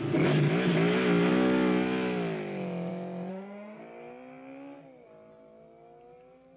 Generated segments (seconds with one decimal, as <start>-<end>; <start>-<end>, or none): 3.3-3.8